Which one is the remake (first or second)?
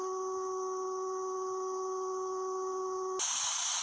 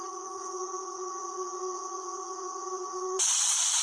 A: second